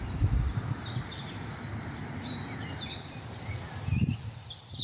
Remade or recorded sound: recorded